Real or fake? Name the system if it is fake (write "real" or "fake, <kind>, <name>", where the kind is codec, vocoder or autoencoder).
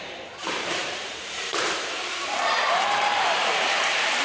fake, vocoder, BigVGAN v2